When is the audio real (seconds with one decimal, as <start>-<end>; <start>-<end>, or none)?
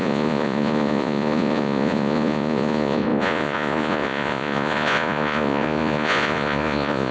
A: none